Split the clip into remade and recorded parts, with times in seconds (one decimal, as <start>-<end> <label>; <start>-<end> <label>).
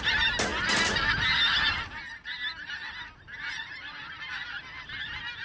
0.0-5.4 recorded